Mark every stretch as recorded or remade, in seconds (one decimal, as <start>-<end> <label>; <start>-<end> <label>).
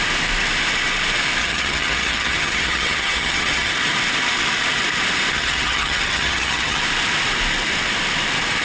0.0-1.4 recorded; 1.4-3.7 remade; 3.7-5.3 recorded; 5.3-6.8 remade; 6.8-8.6 recorded